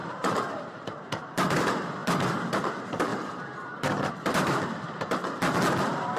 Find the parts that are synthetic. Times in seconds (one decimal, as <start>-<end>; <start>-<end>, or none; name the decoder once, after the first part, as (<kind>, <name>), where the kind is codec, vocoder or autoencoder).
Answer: 0.0-2.0 (vocoder, BigVGAN v2); 2.7-5.2; 5.8-6.2